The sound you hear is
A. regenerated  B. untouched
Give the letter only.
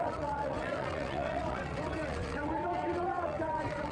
A